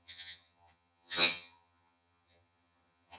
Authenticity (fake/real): fake